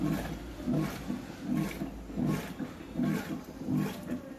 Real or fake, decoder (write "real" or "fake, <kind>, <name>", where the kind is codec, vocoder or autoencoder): real